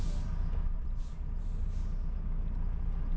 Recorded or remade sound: recorded